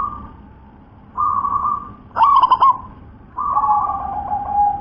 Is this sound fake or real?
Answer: real